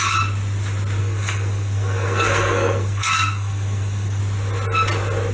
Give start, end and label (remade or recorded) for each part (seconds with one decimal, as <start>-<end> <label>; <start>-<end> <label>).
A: 0.0-1.0 recorded; 1.0-4.2 remade; 4.2-5.3 recorded